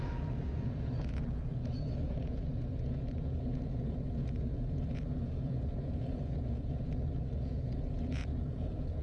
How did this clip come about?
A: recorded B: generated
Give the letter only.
B